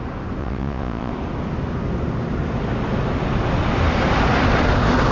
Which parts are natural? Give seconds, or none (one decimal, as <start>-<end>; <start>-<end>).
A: 0.0-0.4; 1.1-5.1